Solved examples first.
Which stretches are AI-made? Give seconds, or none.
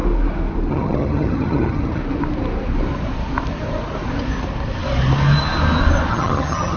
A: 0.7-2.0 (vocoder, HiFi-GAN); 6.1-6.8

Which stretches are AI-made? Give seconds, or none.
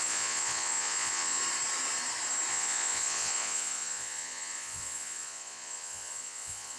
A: 0.0-1.4 (vocoder, Vocos); 2.5-6.8